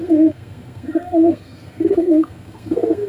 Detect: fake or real fake